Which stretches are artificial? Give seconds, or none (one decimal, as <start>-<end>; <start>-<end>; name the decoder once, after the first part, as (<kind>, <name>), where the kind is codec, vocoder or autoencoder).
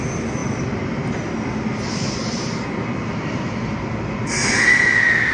0.4-3.6 (vocoder, BigVGAN v2)